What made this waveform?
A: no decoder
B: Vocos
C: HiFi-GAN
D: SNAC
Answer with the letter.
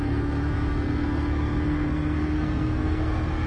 D